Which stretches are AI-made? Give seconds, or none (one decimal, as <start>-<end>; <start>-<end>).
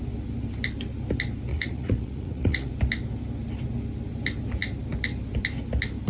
1.5-2.7